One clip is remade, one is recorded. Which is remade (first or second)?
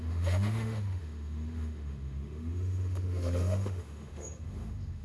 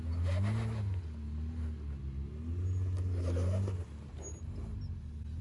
first